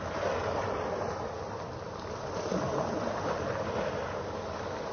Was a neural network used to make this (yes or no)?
no